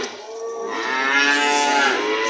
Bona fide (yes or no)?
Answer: yes